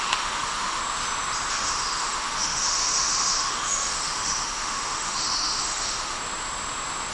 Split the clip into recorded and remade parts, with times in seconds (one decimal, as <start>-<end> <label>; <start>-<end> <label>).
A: 0.0-0.8 remade; 0.8-1.5 recorded; 1.5-6.2 remade; 6.2-7.1 recorded